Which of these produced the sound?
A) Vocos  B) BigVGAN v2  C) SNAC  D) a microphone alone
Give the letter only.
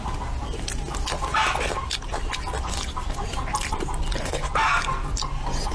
D